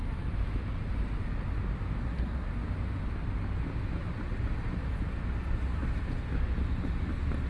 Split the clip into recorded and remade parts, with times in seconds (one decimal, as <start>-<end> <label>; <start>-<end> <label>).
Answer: 0.0-2.0 recorded; 2.0-2.5 remade; 2.5-7.5 recorded